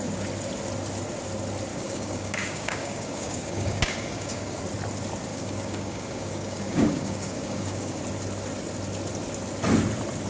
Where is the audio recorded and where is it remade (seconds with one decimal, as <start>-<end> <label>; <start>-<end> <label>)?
0.0-1.7 recorded; 1.7-4.6 remade; 4.6-5.3 recorded; 5.3-8.0 remade; 8.0-10.3 recorded